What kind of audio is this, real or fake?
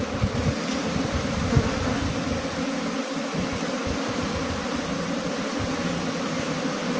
real